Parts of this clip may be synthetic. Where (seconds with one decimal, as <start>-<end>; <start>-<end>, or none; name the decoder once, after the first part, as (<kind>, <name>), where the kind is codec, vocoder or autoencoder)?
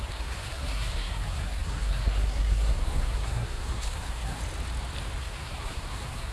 0.0-4.4 (codec, SNAC); 5.2-6.3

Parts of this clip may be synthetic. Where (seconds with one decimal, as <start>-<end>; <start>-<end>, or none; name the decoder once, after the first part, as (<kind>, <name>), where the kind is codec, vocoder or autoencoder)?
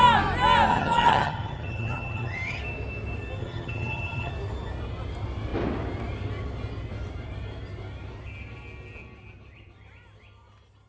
0.7-2.6 (vocoder, HiFi-GAN); 3.4-4.3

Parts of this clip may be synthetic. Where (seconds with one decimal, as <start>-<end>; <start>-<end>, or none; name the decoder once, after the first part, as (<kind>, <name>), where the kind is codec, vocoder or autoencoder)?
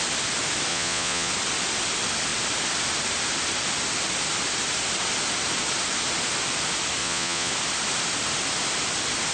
0.7-1.3 (vocoder, Vocos); 7.0-7.5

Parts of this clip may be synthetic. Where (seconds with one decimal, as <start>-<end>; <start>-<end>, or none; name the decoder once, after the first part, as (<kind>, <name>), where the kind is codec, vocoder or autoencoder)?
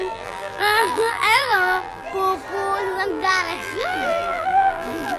0.0-2.1 (vocoder, BigVGAN v2); 3.1-5.2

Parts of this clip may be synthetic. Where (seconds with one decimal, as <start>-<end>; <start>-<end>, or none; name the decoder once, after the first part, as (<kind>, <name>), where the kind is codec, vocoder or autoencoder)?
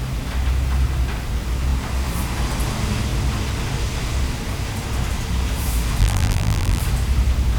6.0-6.8 (vocoder, BigVGAN v2)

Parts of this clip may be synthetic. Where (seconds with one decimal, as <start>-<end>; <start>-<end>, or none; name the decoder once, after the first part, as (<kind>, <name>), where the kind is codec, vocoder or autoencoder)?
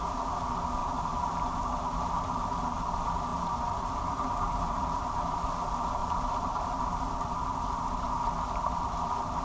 0.8-1.6 (vocoder, BigVGAN v2); 3.3-5.4; 6.0-6.8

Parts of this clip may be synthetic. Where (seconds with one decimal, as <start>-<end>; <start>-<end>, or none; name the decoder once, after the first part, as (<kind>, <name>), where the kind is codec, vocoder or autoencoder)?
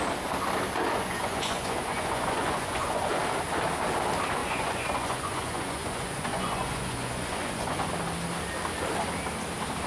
1.0-3.2 (vocoder, Vocos); 4.4-7.9